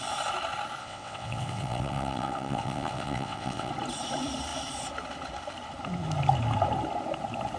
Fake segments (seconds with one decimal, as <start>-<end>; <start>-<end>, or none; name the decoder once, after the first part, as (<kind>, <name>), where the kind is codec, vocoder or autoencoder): 0.8-3.7 (vocoder, WaveNeXt)